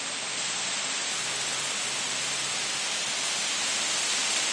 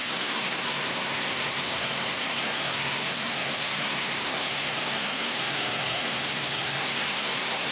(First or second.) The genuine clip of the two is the first